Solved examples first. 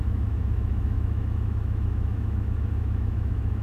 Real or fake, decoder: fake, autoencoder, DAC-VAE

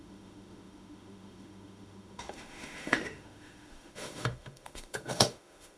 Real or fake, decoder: fake, autoencoder, DAC-VAE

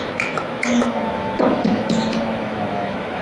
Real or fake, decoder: fake, autoencoder, DAC-VAE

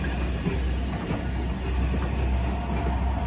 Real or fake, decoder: real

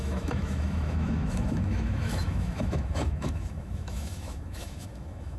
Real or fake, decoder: fake, autoencoder, DAC-VAE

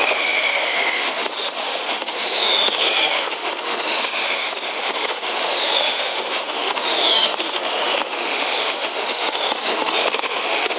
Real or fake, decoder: fake, autoencoder, DAC-VAE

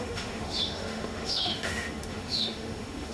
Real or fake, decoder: fake, autoencoder, DAC-VAE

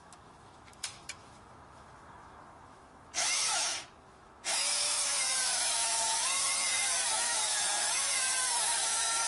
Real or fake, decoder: fake, autoencoder, DAC-VAE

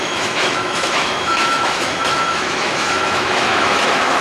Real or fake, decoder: fake, autoencoder, DAC-VAE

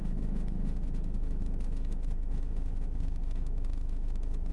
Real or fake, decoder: fake, autoencoder, DAC-VAE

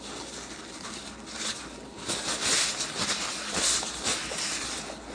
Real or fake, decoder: real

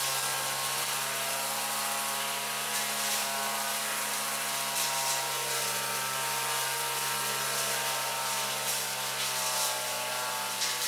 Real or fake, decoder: real